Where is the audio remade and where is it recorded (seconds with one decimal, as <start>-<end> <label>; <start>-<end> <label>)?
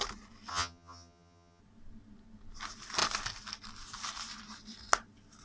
0.0-0.5 recorded; 0.5-1.6 remade; 1.6-5.4 recorded